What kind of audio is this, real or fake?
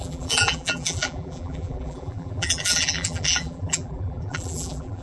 fake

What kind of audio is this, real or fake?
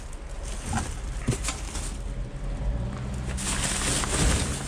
real